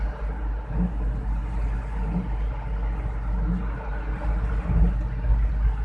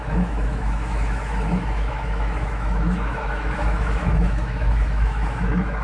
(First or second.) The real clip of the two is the first